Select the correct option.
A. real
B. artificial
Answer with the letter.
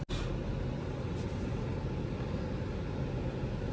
A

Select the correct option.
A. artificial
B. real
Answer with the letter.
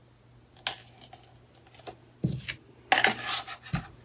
B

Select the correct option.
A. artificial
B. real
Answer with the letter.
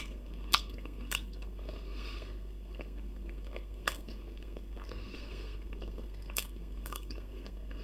A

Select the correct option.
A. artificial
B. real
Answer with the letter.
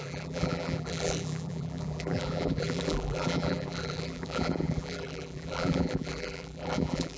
A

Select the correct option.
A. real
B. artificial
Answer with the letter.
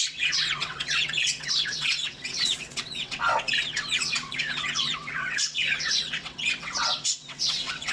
B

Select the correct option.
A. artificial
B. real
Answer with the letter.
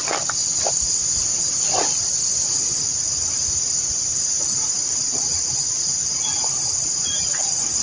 B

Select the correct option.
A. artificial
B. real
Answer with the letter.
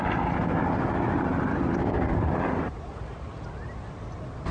B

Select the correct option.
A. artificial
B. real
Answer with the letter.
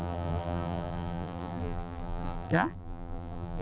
A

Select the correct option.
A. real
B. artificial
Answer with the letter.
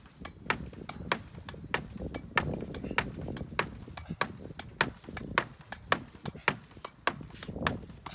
A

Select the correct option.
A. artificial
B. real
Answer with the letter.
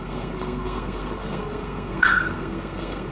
A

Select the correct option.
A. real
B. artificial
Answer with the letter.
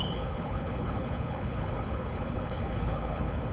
B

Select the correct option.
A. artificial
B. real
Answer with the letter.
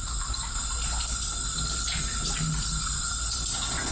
B